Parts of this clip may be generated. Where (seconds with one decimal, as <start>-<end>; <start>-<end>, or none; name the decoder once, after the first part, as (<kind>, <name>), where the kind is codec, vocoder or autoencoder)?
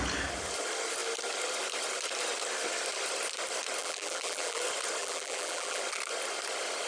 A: 3.8-4.6 (vocoder, BigVGAN v2); 5.0-5.8